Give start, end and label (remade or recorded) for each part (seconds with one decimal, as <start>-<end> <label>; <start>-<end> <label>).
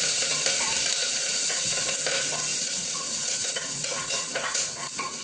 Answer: 0.0-1.0 recorded; 1.0-2.0 remade; 2.0-2.5 recorded; 2.5-5.2 remade